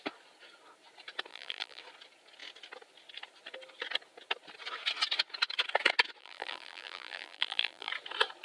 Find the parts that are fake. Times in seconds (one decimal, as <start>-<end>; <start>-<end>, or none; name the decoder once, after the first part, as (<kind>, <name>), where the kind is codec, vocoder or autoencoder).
1.3-1.8 (vocoder, BigVGAN v2); 6.2-7.9